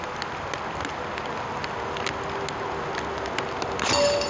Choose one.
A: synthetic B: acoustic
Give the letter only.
B